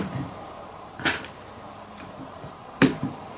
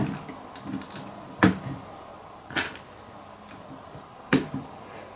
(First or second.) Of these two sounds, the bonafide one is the second